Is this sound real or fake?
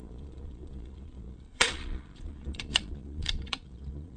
fake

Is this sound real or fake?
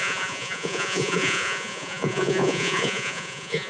fake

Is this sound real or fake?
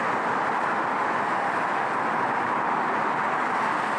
real